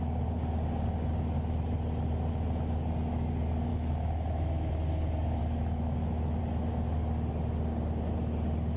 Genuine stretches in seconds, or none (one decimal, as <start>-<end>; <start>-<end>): 0.0-3.7; 4.7-5.4; 6.4-8.8